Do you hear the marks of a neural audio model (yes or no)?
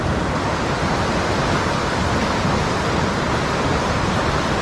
no